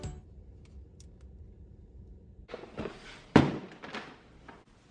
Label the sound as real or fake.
real